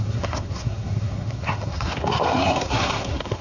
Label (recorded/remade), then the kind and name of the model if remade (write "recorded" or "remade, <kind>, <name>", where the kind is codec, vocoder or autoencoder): remade, codec, SNAC